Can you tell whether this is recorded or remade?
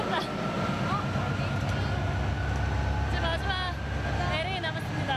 recorded